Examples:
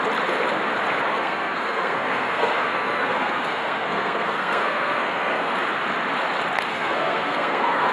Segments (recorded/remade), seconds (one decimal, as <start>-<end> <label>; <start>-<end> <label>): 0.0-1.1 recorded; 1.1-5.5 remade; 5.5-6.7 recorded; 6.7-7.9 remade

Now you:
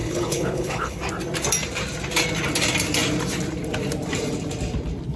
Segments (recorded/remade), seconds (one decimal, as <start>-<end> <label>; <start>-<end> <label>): 0.0-1.0 remade; 1.0-5.2 recorded

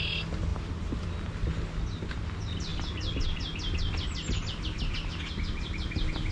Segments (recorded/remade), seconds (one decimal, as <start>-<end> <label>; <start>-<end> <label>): 0.0-0.5 recorded; 0.5-1.1 remade; 1.1-6.3 recorded

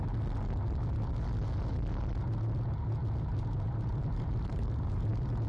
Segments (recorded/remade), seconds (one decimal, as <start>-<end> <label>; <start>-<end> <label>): 0.0-3.3 recorded; 3.3-5.1 remade; 5.1-5.5 recorded

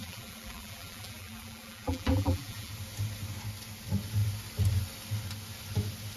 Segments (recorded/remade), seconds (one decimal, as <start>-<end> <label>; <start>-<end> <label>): 0.0-2.7 remade; 2.7-6.2 recorded

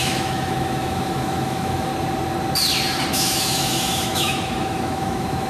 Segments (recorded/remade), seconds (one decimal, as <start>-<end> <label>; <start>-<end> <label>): 0.0-1.9 remade; 1.9-3.1 recorded; 3.1-5.5 remade

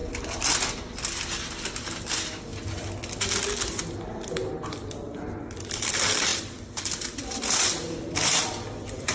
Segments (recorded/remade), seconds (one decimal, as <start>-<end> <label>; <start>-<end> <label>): 0.0-2.5 remade; 2.5-4.5 recorded; 4.5-9.1 remade

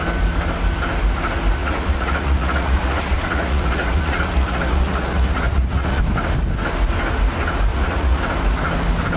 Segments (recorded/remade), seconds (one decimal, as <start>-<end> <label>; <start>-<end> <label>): 0.0-1.6 recorded; 1.6-6.0 remade; 6.0-7.7 recorded; 7.7-8.2 remade; 8.2-9.2 recorded